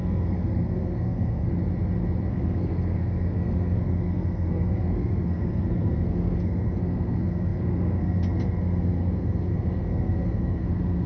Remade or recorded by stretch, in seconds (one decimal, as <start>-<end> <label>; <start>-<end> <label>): 0.0-1.5 remade; 1.5-2.3 recorded; 2.3-11.1 remade